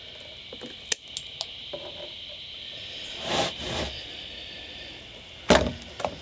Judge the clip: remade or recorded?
recorded